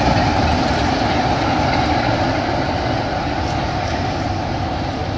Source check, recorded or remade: recorded